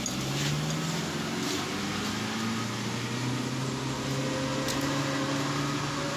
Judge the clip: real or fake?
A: real